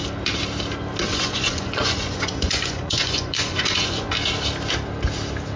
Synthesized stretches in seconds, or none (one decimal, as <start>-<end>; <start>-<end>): 1.1-4.1